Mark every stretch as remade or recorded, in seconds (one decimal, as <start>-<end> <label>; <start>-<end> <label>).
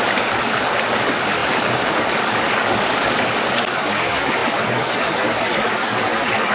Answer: 0.0-6.5 remade